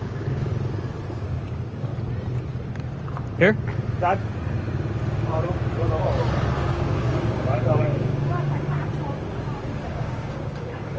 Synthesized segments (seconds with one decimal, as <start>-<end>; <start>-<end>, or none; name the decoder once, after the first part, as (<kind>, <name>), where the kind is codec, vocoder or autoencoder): 0.0-0.5 (codec, DAC); 1.1-1.9; 6.5-8.9; 9.9-11.0